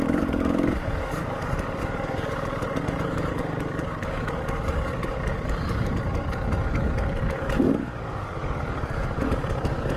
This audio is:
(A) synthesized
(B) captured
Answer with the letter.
A